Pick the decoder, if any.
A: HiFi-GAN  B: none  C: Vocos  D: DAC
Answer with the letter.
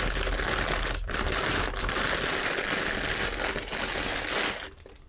B